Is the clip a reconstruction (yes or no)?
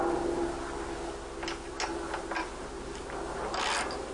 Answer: no